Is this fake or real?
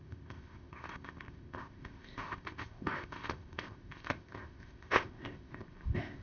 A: fake